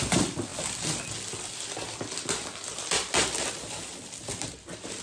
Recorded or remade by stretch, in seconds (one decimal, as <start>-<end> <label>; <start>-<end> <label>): 0.0-5.0 recorded